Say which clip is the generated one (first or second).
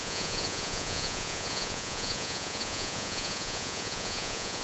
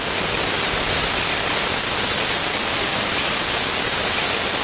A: first